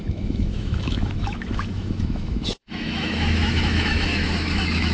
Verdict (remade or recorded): remade